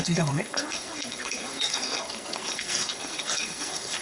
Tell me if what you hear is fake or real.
fake